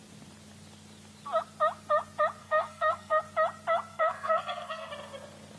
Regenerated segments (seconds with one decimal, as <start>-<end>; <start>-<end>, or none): 2.4-3.2; 3.9-4.9